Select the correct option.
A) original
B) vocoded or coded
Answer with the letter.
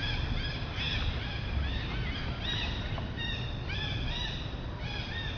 A